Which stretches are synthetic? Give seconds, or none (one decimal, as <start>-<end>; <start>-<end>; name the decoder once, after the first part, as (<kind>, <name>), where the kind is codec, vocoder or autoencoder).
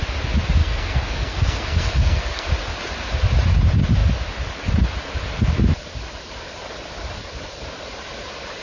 0.6-2.5 (codec, SNAC)